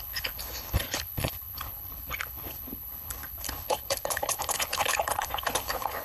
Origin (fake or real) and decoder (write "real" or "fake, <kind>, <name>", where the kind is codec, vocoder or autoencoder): fake, codec, HILCodec